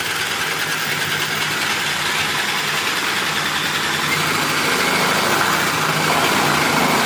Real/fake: real